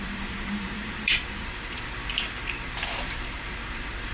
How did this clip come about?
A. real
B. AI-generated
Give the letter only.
B